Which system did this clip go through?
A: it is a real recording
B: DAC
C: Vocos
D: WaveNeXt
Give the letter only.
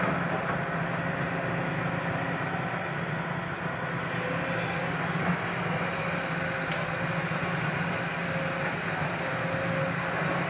A